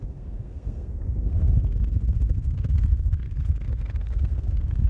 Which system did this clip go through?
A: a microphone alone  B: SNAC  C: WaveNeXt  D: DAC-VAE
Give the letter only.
B